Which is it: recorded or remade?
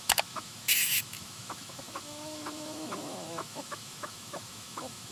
remade